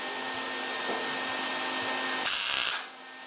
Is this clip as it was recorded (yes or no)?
yes